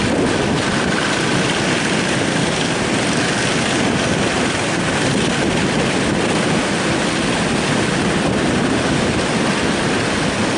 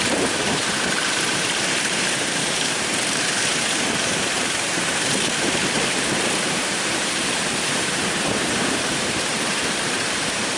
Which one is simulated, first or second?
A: second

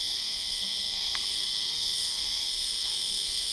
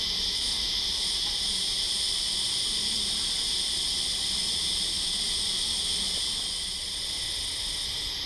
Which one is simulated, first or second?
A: first